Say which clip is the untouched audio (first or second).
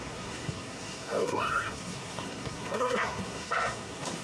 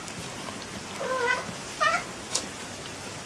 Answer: second